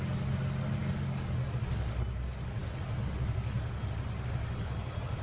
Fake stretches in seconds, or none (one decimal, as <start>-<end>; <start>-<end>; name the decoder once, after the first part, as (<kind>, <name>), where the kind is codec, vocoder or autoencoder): none